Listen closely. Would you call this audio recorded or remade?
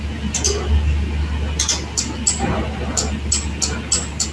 recorded